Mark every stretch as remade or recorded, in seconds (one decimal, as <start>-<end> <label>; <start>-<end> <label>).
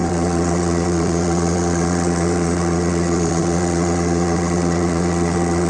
0.0-5.7 remade